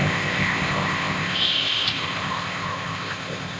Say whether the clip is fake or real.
fake